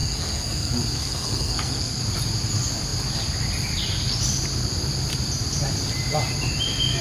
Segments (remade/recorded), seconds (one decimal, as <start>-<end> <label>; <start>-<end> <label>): 0.0-2.0 remade; 2.0-7.0 recorded